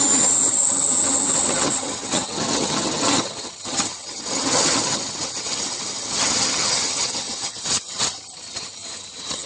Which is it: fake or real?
fake